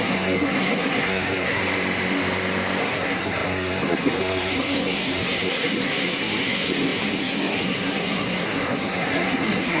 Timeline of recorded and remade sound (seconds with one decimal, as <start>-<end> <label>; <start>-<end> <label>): 0.0-1.6 remade; 1.6-2.8 recorded; 2.8-9.8 remade